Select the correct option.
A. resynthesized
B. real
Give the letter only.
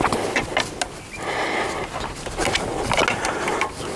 B